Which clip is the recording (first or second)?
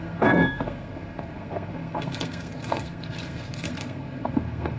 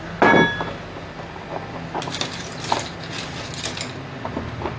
second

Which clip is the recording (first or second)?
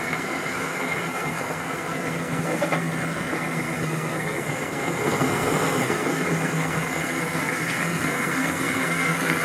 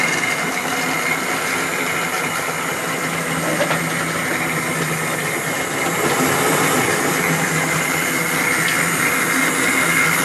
second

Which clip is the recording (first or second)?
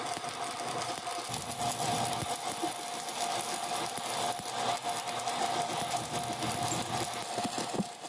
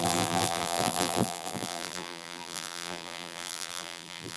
first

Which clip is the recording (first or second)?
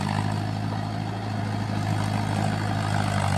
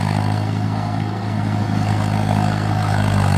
first